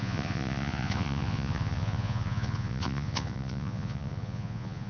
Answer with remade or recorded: remade